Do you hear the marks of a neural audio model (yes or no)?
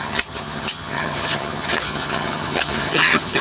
yes